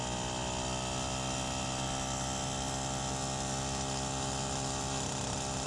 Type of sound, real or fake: real